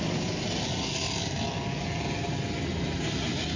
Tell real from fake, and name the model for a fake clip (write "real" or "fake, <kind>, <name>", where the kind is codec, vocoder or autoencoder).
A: real